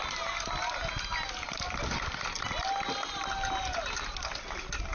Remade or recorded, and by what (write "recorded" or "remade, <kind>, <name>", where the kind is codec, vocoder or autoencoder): recorded